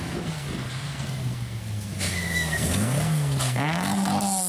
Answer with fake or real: fake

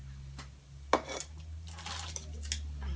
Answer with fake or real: real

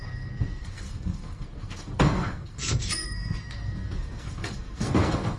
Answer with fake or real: fake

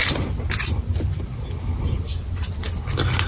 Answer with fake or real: real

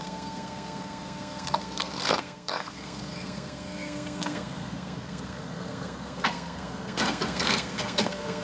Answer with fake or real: fake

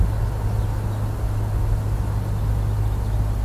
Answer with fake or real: real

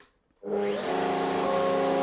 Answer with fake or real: real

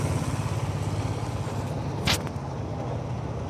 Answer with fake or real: real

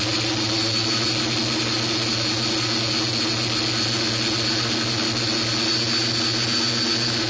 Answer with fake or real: real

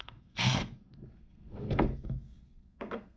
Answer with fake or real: fake